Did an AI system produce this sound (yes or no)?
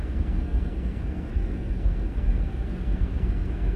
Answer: yes